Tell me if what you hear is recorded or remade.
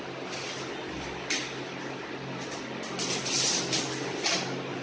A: recorded